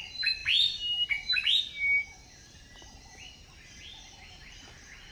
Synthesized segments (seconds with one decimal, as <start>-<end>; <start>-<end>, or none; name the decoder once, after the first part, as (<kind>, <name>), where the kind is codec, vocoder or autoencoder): none

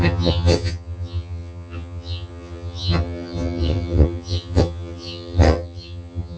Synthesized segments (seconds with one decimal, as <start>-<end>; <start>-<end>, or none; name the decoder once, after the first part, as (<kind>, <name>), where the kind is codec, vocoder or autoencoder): 0.0-6.4 (vocoder, HiFi-GAN)

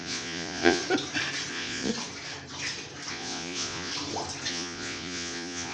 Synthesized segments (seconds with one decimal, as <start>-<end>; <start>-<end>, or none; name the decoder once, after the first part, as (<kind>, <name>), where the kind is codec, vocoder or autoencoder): 0.0-0.8 (vocoder, Vocos); 1.5-1.9; 3.1-3.9; 4.5-5.7

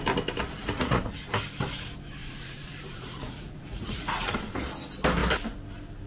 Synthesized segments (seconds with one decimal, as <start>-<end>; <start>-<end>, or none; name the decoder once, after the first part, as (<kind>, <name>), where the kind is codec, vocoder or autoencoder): 0.6-1.1 (vocoder, Vocos); 2.2-4.3

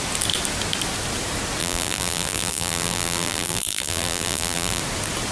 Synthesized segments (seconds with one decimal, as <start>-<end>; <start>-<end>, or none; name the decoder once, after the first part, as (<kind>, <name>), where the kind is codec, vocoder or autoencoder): 1.6-4.8 (vocoder, BigVGAN v2)

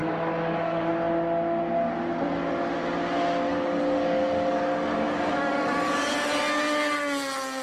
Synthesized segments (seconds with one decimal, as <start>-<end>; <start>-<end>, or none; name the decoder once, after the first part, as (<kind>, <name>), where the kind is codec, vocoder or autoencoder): 0.0-0.9 (codec, DAC); 3.5-6.3

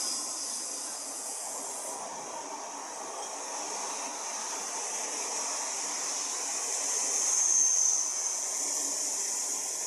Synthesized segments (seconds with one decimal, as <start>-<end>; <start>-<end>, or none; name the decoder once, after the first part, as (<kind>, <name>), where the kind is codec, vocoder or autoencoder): 0.9-1.6 (vocoder, Vocos); 8.1-8.6